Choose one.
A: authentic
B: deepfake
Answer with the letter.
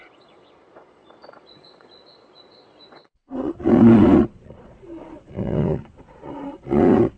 B